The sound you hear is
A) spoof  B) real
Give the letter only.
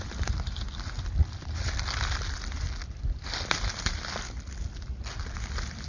B